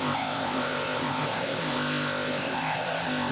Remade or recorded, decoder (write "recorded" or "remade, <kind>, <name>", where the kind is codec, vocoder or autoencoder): remade, codec, ZipCodec